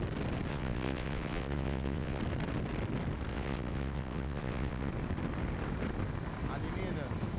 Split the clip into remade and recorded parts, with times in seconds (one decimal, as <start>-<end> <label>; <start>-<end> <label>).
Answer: 0.0-0.5 recorded; 0.5-2.2 remade; 2.2-3.3 recorded; 3.3-4.9 remade; 4.9-7.4 recorded